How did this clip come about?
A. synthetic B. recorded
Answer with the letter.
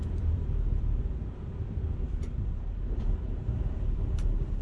A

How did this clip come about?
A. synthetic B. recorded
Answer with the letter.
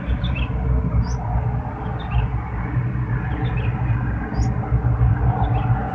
B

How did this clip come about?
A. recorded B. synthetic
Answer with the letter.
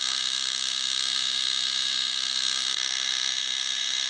B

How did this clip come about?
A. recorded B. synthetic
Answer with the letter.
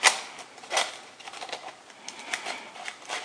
A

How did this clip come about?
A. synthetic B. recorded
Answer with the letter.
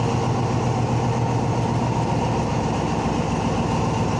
B